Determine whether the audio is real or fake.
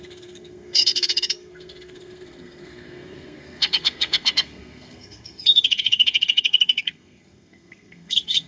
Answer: fake